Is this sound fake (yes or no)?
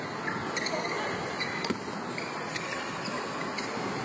no